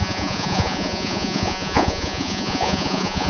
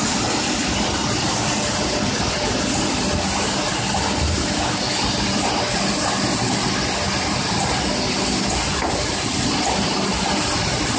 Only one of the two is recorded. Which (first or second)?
second